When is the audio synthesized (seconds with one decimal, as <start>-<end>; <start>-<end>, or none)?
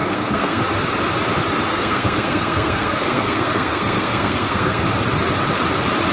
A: 0.0-0.6; 1.7-4.8